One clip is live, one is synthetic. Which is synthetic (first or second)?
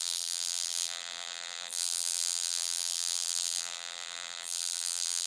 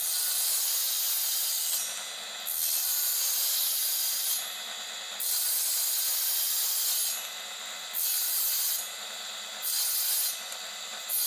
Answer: first